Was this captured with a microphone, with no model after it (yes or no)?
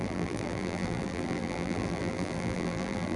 no